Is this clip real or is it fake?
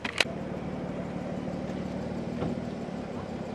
real